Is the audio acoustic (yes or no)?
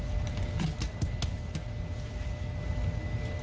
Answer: yes